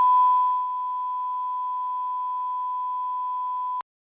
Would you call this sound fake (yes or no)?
no